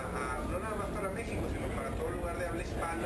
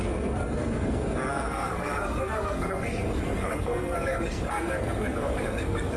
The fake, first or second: second